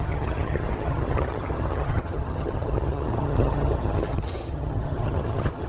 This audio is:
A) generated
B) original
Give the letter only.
A